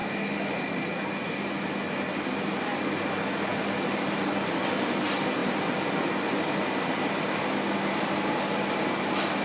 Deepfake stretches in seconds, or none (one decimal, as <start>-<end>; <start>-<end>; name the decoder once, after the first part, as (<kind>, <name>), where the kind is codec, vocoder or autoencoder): none

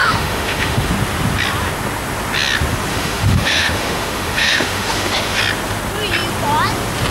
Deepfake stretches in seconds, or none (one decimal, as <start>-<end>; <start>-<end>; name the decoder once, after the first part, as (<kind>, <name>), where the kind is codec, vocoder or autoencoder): 0.0-0.9 (autoencoder, DAC-VAE); 2.9-5.4

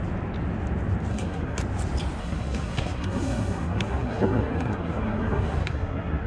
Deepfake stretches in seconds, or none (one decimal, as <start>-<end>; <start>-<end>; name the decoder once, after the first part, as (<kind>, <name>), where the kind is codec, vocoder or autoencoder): 1.1-1.6 (codec, SNAC); 2.2-6.3

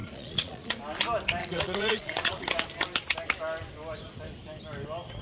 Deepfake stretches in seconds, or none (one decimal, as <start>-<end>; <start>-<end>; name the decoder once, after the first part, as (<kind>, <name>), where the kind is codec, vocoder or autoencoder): 0.0-0.7 (vocoder, Vocos); 1.4-2.4

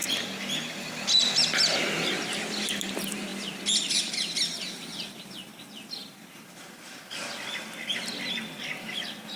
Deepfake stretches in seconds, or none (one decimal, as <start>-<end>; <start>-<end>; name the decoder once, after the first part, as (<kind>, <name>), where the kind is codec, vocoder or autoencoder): none

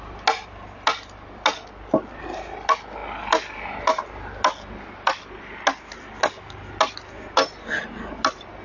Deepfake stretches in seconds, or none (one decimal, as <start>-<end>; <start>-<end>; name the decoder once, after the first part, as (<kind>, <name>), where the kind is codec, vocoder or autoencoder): none